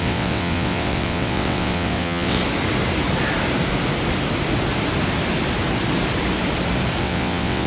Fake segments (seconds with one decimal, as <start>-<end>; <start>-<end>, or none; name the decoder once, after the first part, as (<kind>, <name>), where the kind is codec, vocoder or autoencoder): 0.0-2.4 (vocoder, WaveNeXt); 7.0-7.7